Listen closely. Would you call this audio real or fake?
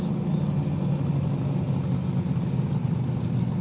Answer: real